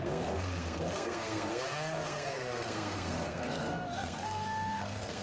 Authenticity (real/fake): fake